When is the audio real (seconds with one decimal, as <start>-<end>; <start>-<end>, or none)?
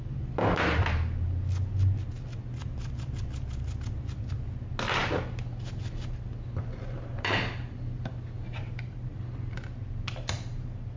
0.0-11.0